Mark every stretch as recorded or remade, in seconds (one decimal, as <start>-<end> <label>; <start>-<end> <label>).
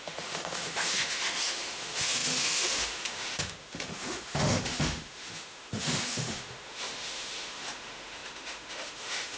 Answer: 0.0-9.4 remade